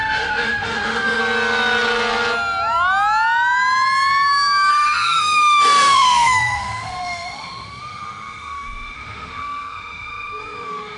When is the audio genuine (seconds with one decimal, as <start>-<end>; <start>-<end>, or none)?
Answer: 1.2-4.7